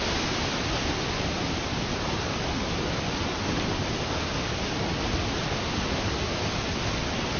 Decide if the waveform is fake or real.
real